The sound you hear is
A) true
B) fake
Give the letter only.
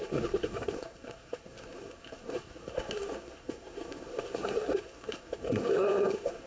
B